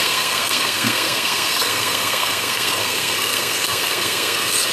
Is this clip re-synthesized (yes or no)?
yes